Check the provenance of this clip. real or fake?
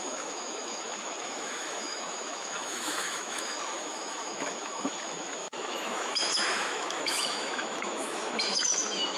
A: fake